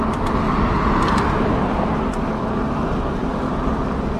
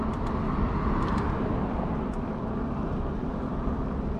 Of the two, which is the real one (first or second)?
first